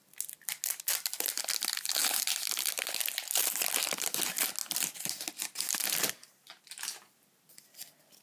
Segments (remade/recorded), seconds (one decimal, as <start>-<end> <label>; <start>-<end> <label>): 0.0-8.2 recorded